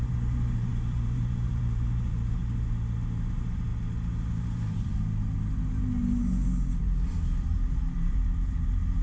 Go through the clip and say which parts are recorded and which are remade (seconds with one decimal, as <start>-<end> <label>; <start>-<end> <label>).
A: 0.0-2.4 remade; 2.4-3.3 recorded; 3.3-3.7 remade; 3.7-4.3 recorded; 4.3-4.9 remade; 4.9-6.8 recorded; 6.8-9.0 remade